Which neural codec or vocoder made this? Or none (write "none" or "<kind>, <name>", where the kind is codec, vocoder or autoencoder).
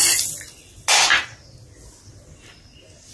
none